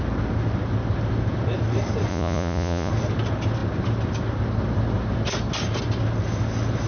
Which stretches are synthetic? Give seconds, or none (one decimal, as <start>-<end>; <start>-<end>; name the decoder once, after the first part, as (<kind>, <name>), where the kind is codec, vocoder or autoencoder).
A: 2.1-2.9 (vocoder, Vocos)